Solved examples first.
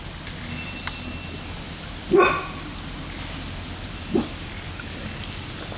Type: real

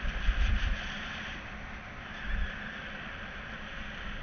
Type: real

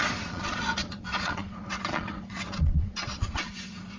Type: fake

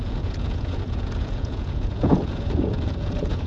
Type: fake